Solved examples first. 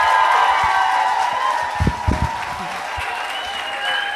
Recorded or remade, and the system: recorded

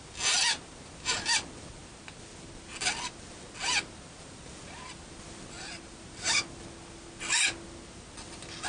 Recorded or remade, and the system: recorded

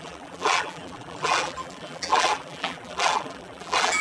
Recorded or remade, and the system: remade, vocoder, BigVGAN v2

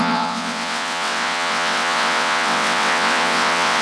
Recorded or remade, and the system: remade, vocoder, WaveNeXt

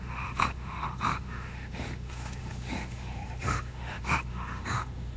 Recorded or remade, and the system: remade, autoencoder, DAC-VAE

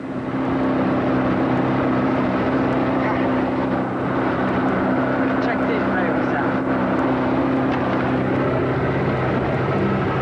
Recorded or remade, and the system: recorded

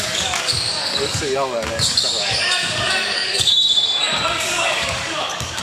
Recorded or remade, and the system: remade, codec, DAC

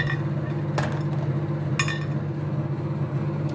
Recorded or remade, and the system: recorded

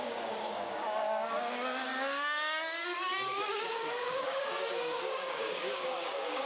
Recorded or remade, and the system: remade, codec, DAC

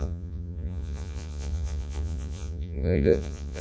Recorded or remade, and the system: remade, vocoder, Vocos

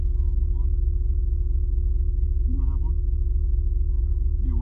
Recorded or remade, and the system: recorded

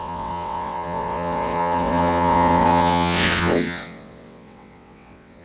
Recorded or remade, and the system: remade, vocoder, WaveNeXt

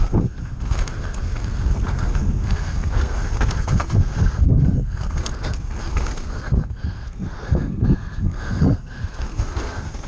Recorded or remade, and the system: remade, codec, SNAC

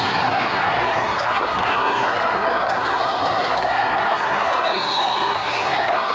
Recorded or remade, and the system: remade, codec, SNAC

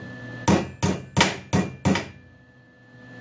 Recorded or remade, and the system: recorded